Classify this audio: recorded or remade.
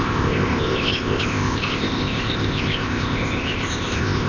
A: remade